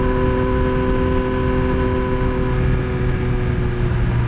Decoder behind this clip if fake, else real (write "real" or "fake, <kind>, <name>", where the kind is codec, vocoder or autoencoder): real